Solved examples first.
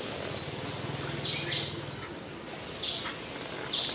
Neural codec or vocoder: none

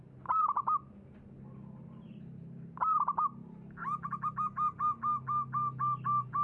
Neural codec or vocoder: none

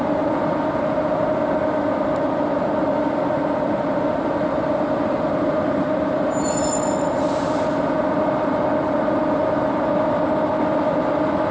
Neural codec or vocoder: none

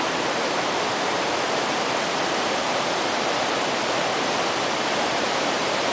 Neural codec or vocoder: vocoder, BigVGAN v2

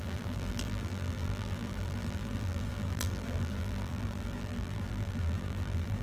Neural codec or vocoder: vocoder, BigVGAN v2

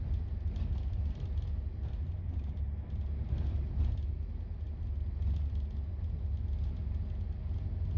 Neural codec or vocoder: none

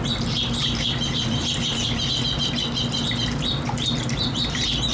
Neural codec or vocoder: vocoder, BigVGAN v2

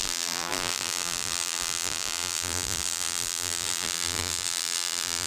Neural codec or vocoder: vocoder, BigVGAN v2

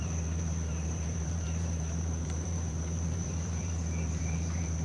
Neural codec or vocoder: vocoder, BigVGAN v2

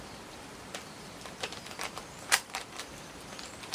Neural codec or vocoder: vocoder, BigVGAN v2